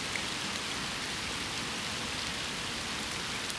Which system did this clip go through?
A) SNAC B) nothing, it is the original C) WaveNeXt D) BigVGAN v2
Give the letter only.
B